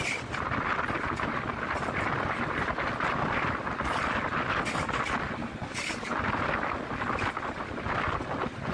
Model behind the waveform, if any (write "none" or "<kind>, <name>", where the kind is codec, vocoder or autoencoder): none